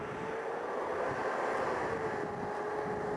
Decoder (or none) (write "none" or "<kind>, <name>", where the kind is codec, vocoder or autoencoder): none